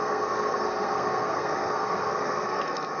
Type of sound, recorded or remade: remade